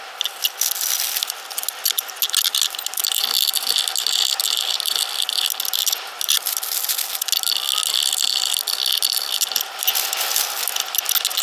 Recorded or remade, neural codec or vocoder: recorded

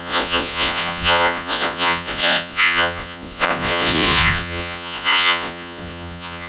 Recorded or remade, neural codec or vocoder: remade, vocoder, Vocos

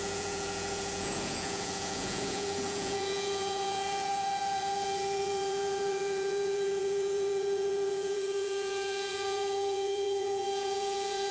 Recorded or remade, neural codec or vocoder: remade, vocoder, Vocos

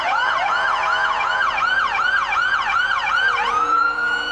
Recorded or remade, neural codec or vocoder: remade, vocoder, Vocos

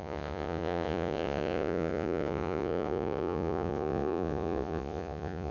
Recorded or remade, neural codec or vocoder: remade, vocoder, Vocos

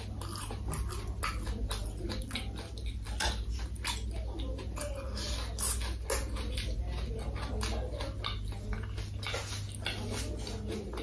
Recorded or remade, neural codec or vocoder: recorded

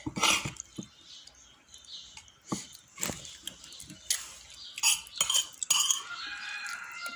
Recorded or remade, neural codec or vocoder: recorded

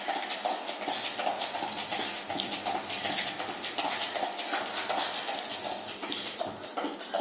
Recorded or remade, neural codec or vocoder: recorded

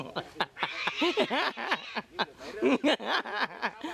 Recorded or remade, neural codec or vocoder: recorded